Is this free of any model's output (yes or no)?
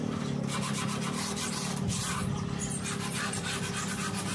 yes